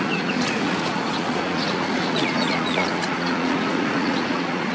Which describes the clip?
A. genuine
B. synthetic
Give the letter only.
B